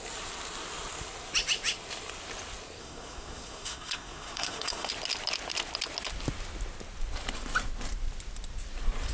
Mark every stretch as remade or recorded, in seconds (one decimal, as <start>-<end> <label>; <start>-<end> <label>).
0.0-2.8 recorded; 2.8-4.9 remade; 4.9-9.1 recorded